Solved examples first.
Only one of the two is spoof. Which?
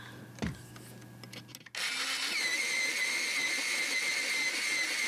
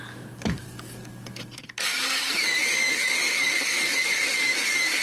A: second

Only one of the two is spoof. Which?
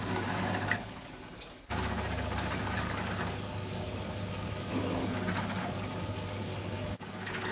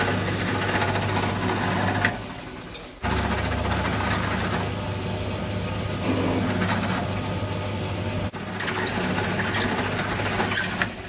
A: first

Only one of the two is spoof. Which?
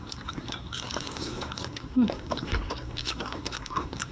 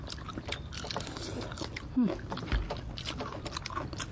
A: first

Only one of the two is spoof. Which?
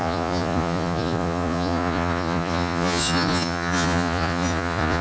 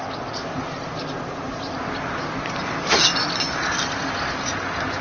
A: first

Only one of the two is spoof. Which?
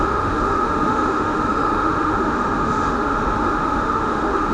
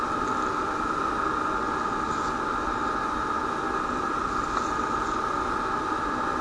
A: first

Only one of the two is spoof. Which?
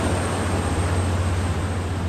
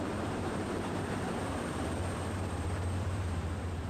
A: second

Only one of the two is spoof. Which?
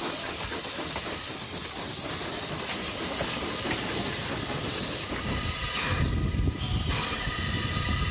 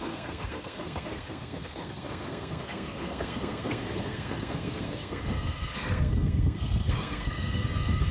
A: second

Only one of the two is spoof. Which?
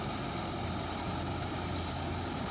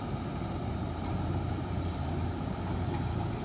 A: second